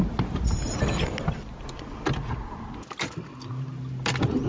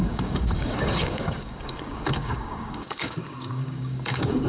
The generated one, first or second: second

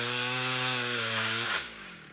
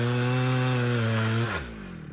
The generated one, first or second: first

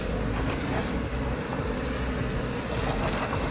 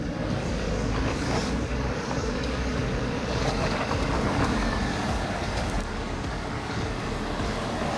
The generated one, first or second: second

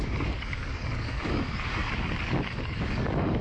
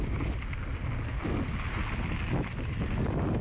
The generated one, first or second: first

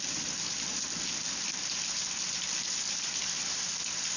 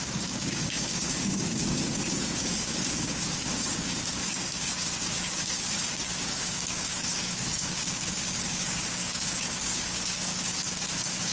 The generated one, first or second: second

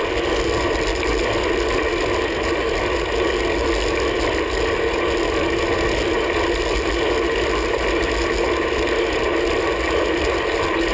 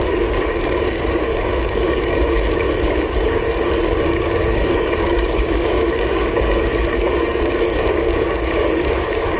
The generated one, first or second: second